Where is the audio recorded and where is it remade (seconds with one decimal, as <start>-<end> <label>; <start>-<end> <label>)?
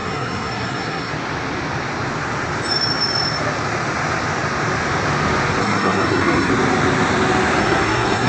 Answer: 0.0-1.1 remade; 1.1-5.6 recorded; 5.6-6.5 remade; 6.5-7.6 recorded; 7.6-8.3 remade